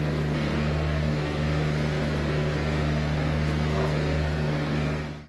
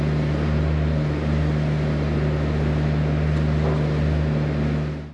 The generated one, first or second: first